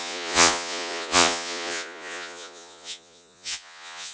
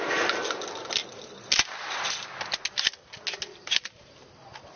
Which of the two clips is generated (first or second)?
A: first